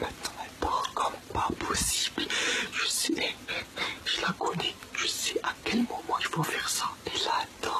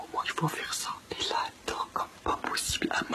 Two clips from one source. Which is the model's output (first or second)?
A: first